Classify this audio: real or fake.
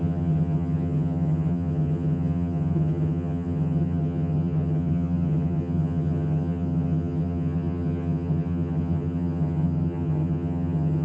fake